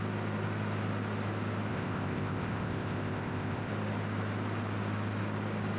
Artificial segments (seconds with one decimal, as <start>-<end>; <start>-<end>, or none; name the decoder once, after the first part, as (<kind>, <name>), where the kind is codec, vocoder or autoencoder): 1.7-3.7 (codec, ZipCodec)